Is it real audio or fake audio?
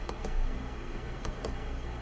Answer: fake